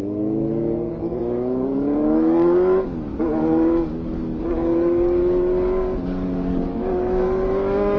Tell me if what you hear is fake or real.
fake